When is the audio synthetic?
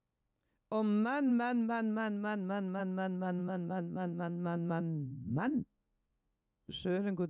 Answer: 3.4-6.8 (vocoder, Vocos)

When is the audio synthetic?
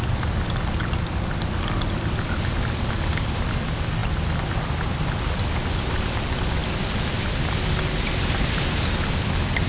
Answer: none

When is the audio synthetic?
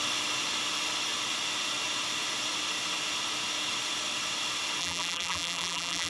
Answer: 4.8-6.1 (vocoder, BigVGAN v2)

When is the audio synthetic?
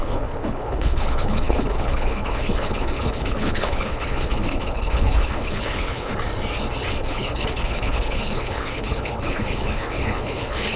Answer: 0.0-6.1 (codec, HILCodec); 7.0-10.8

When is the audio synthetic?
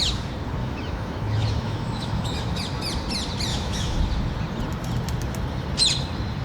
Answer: 0.6-2.6 (autoencoder, DAC-VAE); 3.5-4.0